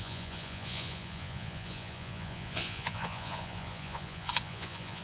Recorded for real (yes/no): no